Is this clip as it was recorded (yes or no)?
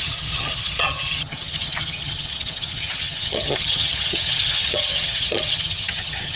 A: no